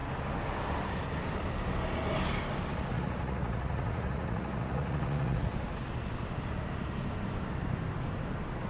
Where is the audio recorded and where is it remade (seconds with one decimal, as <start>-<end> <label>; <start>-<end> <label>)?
0.0-2.9 recorded; 2.9-5.5 remade; 5.5-8.7 recorded